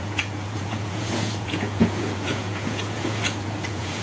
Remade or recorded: remade